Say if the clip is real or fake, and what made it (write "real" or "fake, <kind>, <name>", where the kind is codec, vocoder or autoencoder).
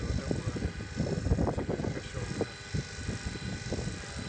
real